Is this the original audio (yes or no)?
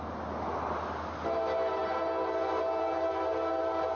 yes